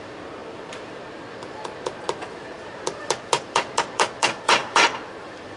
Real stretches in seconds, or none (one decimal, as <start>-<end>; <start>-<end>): none